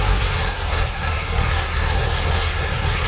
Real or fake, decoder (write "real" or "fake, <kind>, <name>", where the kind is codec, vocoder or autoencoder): fake, codec, SNAC